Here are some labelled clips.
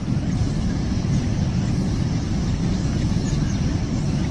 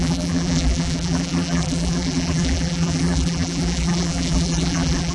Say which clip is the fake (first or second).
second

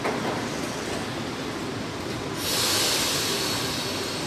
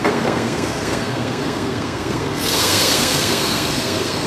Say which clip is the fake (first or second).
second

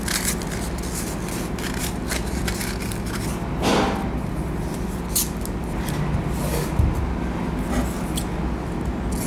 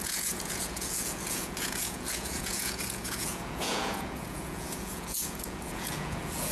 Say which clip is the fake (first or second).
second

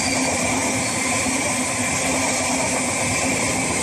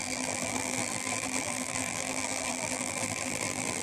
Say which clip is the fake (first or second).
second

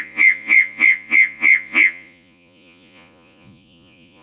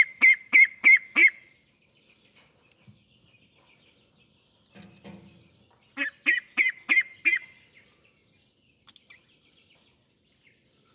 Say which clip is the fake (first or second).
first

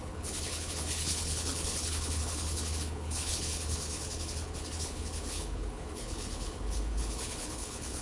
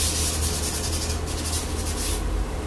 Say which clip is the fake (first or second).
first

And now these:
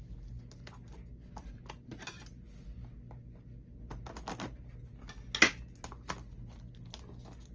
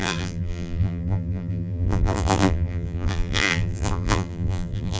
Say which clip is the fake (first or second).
second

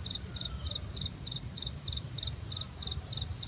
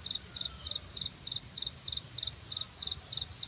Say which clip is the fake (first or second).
first